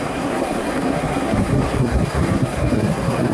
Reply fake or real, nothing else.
fake